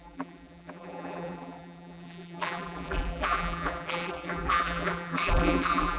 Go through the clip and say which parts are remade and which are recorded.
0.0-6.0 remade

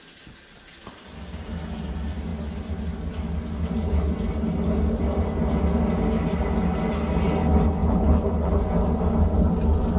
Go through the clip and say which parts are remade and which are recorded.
0.0-7.8 recorded; 7.8-8.5 remade; 8.5-10.0 recorded

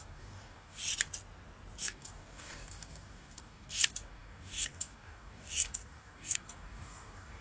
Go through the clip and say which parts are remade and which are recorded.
0.0-0.8 remade; 0.8-1.8 recorded; 1.8-7.4 remade

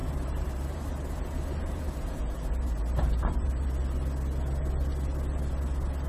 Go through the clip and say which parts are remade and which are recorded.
0.0-3.7 remade; 3.7-6.1 recorded

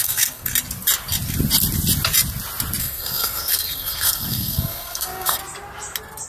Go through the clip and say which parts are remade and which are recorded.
0.0-0.5 remade; 0.5-2.8 recorded; 2.8-5.4 remade; 5.4-6.3 recorded

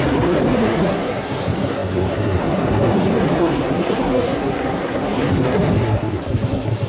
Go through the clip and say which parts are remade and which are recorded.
0.0-6.9 remade

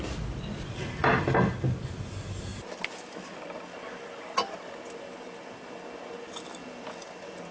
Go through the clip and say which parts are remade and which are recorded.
0.0-7.5 recorded